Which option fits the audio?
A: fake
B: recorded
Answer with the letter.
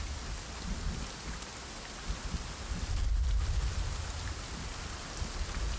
B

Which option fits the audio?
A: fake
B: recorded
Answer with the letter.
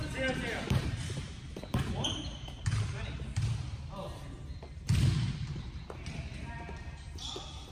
A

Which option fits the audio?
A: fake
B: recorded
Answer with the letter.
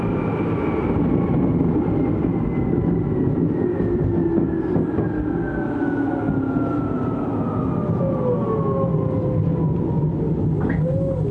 B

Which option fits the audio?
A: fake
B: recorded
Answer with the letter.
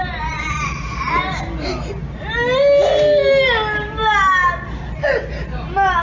B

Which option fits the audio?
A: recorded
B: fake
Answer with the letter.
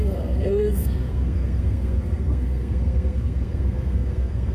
B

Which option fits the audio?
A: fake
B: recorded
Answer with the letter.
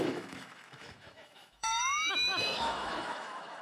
A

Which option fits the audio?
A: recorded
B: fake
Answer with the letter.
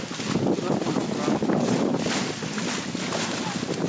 A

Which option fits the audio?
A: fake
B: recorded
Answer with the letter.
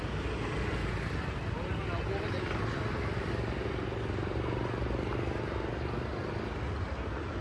B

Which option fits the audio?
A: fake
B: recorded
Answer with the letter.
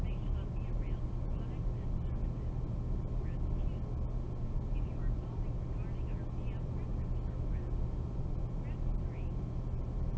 B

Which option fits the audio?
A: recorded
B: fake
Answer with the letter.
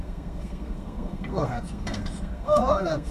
B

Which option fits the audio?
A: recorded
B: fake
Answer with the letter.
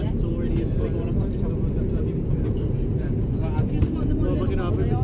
A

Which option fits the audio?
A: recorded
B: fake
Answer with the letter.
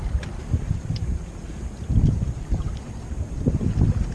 A